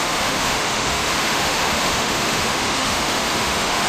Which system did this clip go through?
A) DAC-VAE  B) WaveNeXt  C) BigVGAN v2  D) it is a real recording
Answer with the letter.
A